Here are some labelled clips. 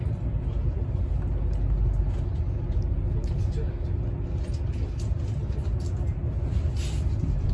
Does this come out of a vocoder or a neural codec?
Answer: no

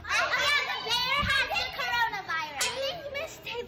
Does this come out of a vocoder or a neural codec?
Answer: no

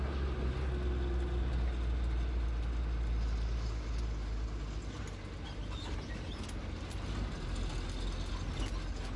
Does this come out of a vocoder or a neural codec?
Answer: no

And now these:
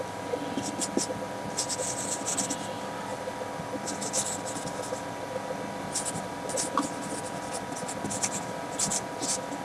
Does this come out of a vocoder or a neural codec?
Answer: no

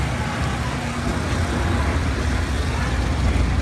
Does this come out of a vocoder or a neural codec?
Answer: no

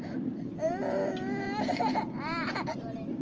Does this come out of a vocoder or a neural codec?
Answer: no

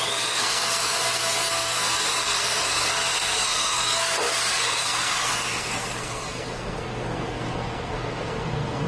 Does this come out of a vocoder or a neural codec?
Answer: yes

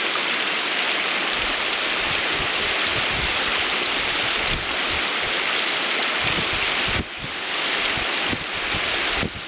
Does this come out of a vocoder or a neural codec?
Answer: no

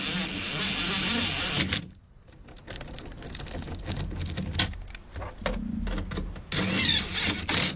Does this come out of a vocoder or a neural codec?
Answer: no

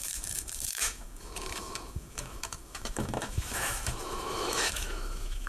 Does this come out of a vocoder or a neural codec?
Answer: yes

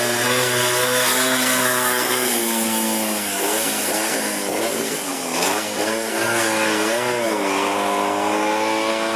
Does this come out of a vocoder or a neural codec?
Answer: yes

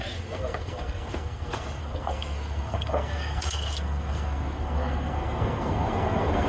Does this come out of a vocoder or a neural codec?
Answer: yes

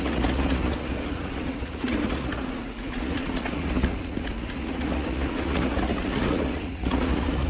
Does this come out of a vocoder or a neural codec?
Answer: yes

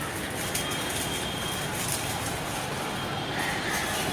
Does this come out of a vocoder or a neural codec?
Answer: no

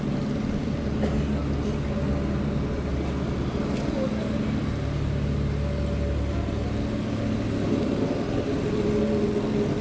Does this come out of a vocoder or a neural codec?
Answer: no